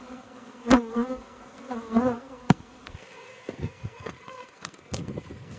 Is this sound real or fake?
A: fake